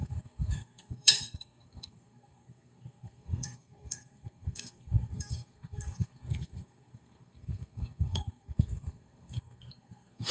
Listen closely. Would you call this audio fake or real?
fake